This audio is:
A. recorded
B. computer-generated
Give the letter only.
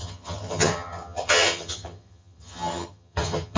B